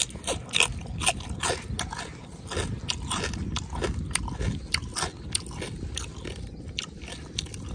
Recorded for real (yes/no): yes